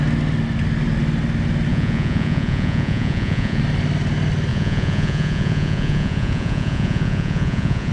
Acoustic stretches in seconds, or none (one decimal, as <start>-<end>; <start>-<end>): 0.0-1.7; 3.6-4.5